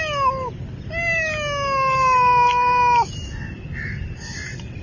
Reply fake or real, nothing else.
real